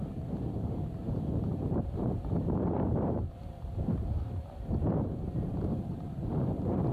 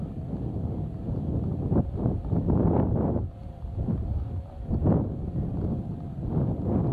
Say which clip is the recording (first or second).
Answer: second